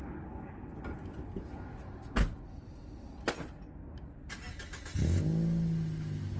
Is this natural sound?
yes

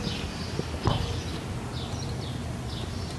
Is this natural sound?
yes